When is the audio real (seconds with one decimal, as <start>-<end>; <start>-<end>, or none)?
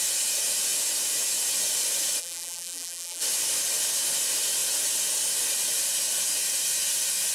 0.0-2.2; 3.2-7.3